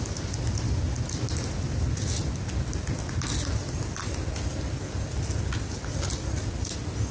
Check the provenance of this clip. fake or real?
real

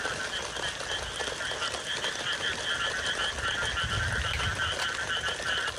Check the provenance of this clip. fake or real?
real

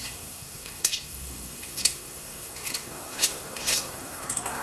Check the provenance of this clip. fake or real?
fake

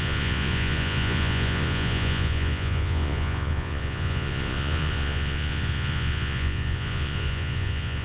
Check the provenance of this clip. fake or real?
fake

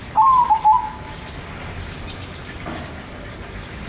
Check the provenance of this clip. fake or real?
real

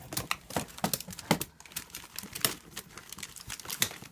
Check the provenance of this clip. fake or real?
real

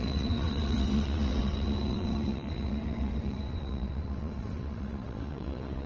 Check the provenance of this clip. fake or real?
fake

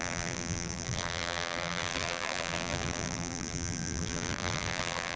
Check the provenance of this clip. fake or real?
fake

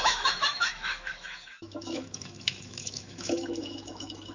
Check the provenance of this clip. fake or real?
fake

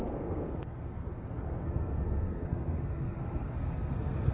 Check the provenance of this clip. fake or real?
fake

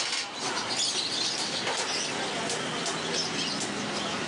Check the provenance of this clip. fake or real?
real